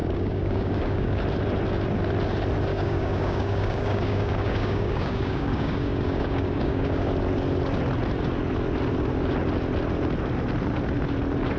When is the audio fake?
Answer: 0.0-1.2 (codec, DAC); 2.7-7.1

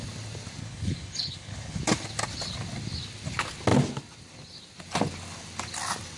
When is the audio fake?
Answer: 0.6-1.8 (codec, HILCodec)

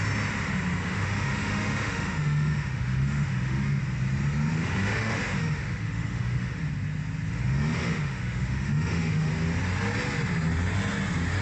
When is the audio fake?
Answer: 0.8-3.8 (autoencoder, DAC-VAE); 4.5-6.7; 7.3-9.3

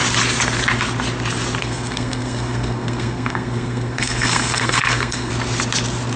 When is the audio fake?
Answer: 1.6-5.3 (codec, SNAC)

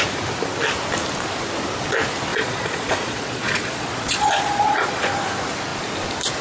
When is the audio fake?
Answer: 2.3-5.1 (vocoder, Vocos)

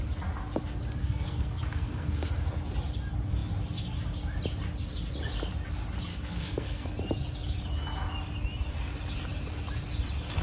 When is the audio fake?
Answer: 1.0-2.3 (codec, SNAC); 6.1-6.9

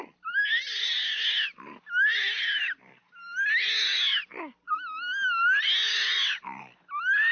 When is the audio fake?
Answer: none

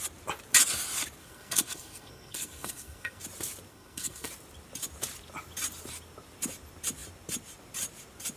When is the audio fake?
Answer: 1.2-3.2 (codec, SNAC); 3.7-4.3